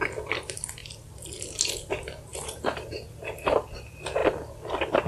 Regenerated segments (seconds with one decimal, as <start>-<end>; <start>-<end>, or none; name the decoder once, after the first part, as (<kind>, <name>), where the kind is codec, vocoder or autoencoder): 2.3-3.3 (vocoder, BigVGAN v2)